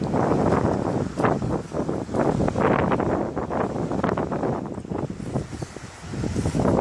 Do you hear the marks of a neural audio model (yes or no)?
no